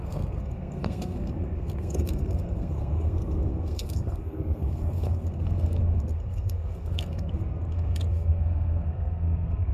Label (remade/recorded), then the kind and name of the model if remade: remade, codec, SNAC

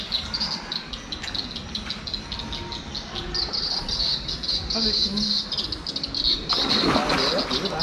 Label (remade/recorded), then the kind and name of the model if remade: recorded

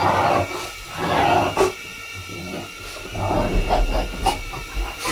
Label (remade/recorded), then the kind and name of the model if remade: recorded